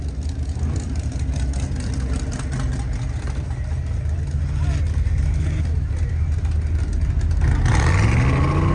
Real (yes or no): yes